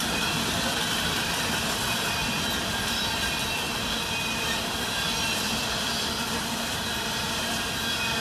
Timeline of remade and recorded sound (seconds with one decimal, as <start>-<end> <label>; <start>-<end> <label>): 0.0-2.2 recorded; 2.2-6.2 remade; 6.2-8.2 recorded